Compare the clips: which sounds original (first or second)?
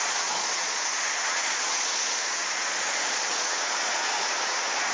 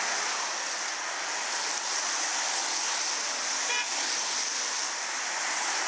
second